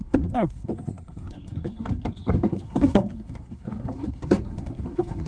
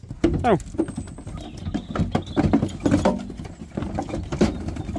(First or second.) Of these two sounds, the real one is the second